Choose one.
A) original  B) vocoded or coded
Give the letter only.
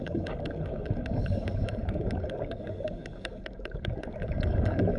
B